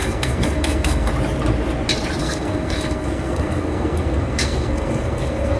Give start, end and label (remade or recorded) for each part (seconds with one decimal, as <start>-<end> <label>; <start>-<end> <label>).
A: 0.0-1.1 remade; 1.1-2.2 recorded; 2.2-5.6 remade